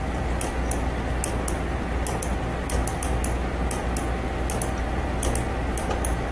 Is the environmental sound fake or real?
real